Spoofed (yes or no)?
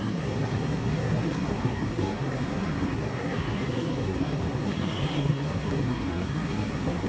yes